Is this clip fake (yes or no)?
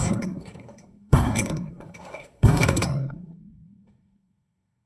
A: yes